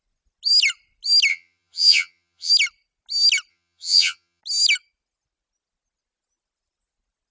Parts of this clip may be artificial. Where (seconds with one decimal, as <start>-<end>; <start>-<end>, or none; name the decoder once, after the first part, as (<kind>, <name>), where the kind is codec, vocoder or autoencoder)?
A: 1.3-2.5 (vocoder, HiFi-GAN); 3.5-4.4